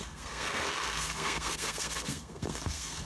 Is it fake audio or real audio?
fake